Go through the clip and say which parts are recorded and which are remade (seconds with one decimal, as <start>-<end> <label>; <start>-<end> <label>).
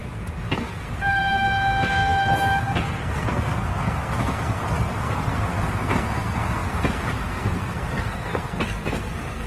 0.0-9.5 remade